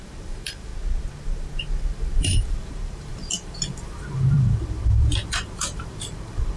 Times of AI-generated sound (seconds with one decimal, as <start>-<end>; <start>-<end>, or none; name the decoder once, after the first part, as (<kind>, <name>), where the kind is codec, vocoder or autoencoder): 0.0-0.7 (vocoder, BigVGAN v2); 1.8-6.6